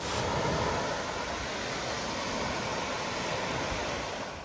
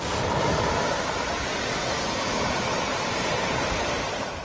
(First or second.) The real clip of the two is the first